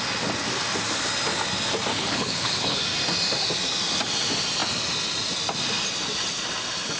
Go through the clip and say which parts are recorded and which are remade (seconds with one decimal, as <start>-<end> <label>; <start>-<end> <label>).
0.0-1.9 recorded; 1.9-2.8 remade; 2.8-7.0 recorded